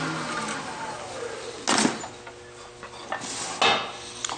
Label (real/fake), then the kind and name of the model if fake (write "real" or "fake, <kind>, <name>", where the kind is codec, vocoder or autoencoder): real